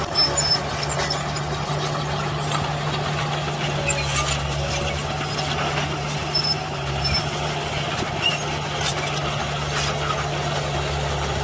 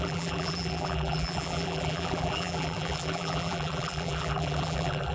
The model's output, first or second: second